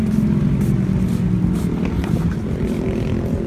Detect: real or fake real